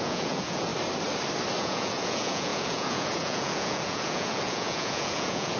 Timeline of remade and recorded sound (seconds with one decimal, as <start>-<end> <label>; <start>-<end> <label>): 0.0-0.7 remade; 0.7-1.6 recorded; 1.6-5.6 remade